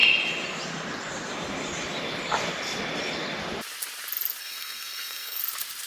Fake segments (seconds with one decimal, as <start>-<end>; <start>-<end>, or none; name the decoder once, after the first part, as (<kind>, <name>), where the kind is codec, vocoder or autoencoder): 4.4-5.4 (codec, SNAC)